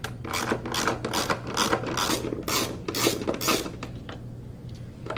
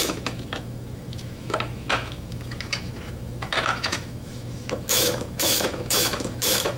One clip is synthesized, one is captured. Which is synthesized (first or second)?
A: second